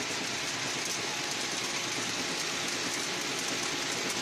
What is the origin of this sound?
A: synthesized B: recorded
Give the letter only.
B